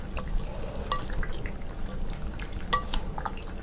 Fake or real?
real